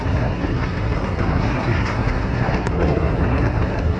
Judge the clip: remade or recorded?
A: remade